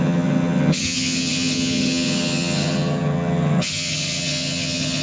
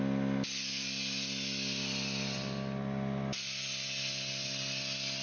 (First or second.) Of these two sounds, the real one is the second